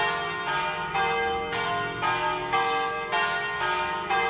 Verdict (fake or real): real